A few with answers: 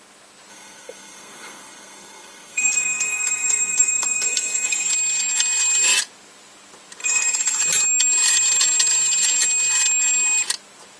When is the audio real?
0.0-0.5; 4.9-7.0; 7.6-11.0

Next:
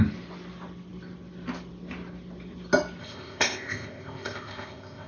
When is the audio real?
0.0-3.0

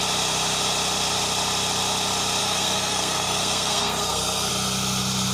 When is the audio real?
0.0-2.4; 4.5-5.3

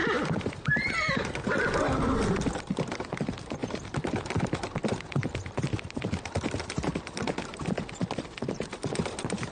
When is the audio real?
0.0-9.5

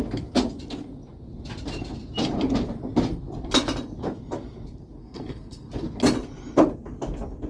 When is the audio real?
0.0-5.0; 5.7-7.5

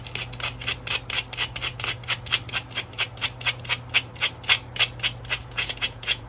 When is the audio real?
0.0-5.4

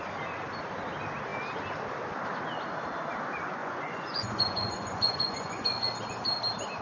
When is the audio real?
0.0-3.6; 5.9-6.8

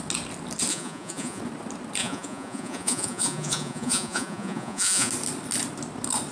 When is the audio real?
0.0-0.7; 1.4-2.0; 5.1-6.3